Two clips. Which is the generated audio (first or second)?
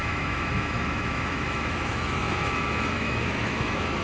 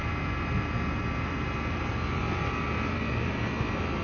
first